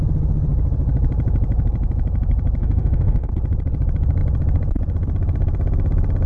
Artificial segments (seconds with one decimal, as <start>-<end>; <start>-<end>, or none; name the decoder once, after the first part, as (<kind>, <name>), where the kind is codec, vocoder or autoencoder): 2.6-3.3 (autoencoder, DAC-VAE)